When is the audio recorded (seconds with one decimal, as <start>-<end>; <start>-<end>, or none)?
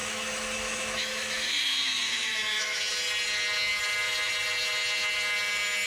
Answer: 2.8-5.9